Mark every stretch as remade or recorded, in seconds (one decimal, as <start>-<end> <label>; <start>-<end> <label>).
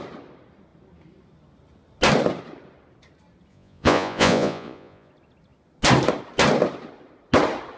0.0-3.5 recorded; 3.5-5.1 remade; 5.1-7.8 recorded